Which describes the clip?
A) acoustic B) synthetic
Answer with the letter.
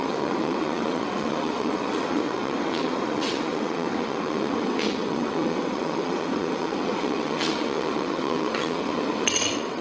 B